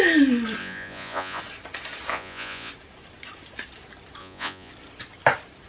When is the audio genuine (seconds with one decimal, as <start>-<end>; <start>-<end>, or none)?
0.0-0.6; 1.4-2.1; 2.7-4.2; 4.7-5.7